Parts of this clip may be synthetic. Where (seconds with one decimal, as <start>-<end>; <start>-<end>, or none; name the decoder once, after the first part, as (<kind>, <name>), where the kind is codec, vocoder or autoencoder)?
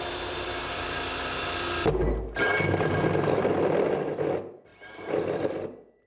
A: none